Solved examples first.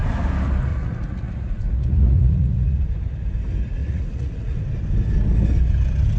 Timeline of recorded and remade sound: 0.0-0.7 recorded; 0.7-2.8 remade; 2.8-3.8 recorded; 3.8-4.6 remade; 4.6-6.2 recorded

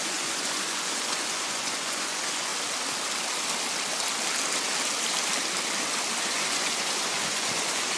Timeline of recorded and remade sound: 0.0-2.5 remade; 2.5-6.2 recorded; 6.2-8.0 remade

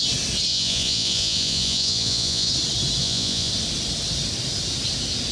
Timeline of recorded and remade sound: 0.0-0.5 recorded; 0.5-2.5 remade; 2.5-3.0 recorded; 3.0-3.5 remade; 3.5-5.3 recorded

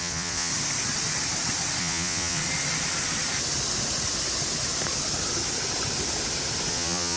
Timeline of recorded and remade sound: 0.0-0.5 remade; 0.5-1.8 recorded; 1.8-2.4 remade; 2.4-6.7 recorded; 6.7-7.2 remade

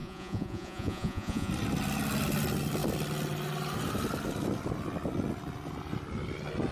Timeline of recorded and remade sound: 0.0-1.5 remade; 1.5-6.7 recorded

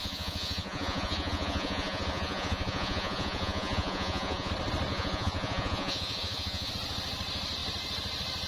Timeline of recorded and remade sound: 0.0-4.5 remade; 4.5-4.9 recorded; 4.9-6.7 remade; 6.7-8.5 recorded